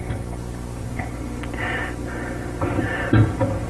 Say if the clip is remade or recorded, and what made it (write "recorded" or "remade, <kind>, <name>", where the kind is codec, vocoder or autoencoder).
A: recorded